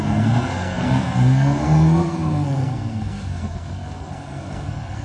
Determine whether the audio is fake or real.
fake